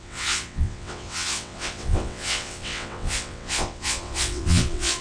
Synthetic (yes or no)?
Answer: yes